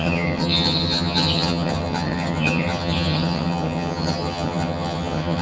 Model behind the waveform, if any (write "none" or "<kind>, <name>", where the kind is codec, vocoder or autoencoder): vocoder, HiFi-GAN